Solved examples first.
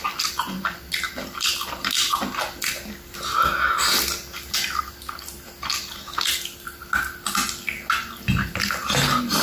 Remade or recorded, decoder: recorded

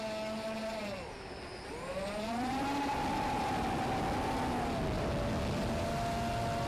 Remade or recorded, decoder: recorded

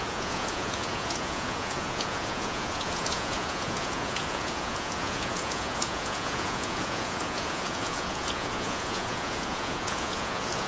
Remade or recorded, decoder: remade, vocoder, Vocos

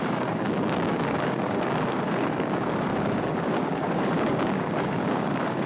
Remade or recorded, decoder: remade, codec, DAC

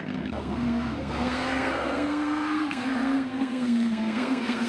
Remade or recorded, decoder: remade, codec, SNAC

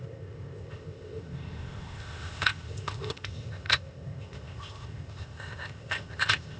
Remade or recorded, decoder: remade, codec, ZipCodec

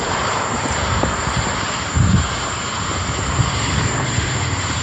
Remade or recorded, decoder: remade, vocoder, BigVGAN v2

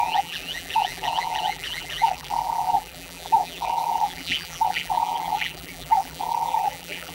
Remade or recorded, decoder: remade, vocoder, BigVGAN v2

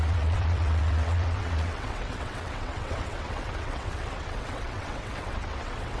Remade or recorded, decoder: remade, vocoder, WaveNeXt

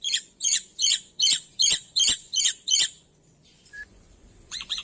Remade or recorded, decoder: remade, vocoder, Vocos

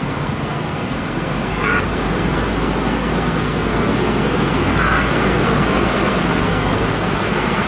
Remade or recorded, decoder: remade, codec, SNAC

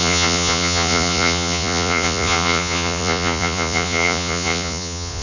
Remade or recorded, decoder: remade, vocoder, Vocos